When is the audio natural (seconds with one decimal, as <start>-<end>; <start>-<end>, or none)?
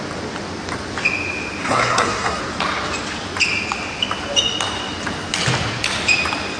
0.0-1.6; 2.4-6.6